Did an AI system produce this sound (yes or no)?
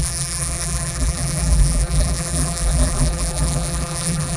yes